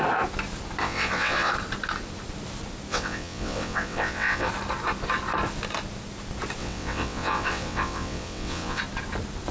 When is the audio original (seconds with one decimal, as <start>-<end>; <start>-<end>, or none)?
0.0-0.8; 1.5-2.9; 4.5-6.6; 8.8-9.5